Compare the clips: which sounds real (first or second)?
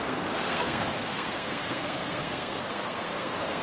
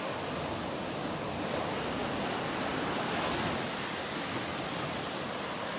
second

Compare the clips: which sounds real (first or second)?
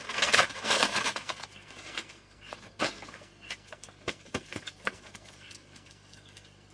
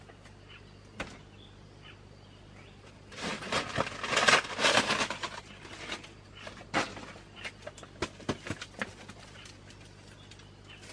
second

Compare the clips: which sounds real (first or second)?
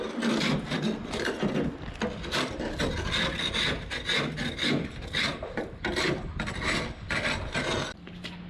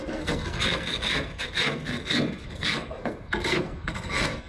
first